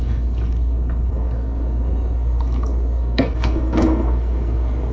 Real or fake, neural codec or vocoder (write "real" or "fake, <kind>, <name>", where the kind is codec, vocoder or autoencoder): fake, codec, SNAC